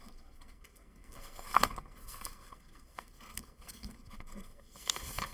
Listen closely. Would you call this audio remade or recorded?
remade